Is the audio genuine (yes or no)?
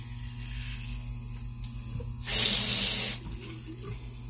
yes